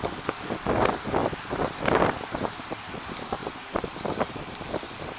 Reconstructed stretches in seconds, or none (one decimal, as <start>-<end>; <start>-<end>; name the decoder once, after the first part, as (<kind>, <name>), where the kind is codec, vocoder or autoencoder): none